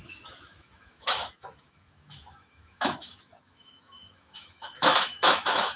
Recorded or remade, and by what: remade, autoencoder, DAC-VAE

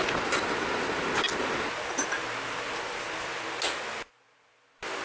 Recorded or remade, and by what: recorded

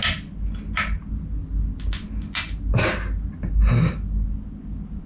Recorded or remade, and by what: recorded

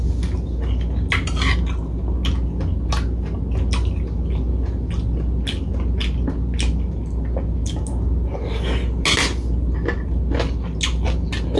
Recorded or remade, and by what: recorded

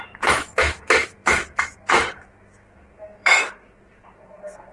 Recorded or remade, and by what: remade, autoencoder, DAC-VAE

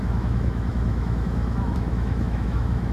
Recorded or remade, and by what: remade, autoencoder, DAC-VAE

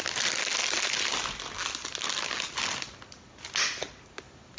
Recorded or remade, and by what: recorded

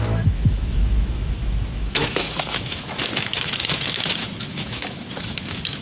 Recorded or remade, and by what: remade, autoencoder, DAC-VAE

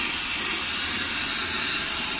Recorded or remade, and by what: recorded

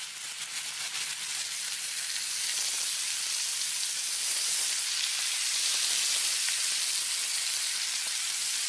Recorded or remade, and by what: recorded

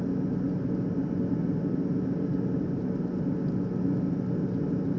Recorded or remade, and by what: recorded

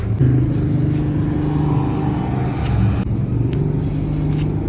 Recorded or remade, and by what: recorded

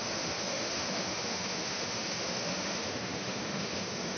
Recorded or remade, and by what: remade, autoencoder, DAC-VAE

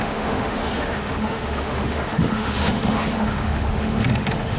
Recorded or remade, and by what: remade, autoencoder, DAC-VAE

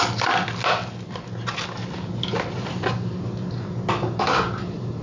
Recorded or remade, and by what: recorded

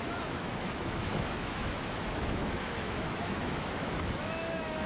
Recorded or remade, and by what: remade, autoencoder, DAC-VAE